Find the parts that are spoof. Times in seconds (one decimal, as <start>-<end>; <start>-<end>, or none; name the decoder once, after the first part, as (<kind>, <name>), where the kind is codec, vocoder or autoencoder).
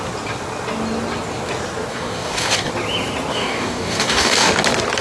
1.9-2.7 (codec, DAC); 3.3-4.5